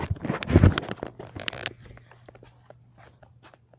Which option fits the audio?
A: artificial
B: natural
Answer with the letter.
B